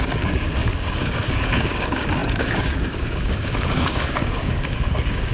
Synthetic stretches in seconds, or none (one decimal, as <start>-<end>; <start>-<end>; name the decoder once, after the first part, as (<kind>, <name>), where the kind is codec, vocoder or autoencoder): 0.0-5.3 (codec, DAC)